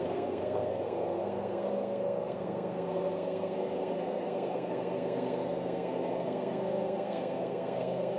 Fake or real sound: fake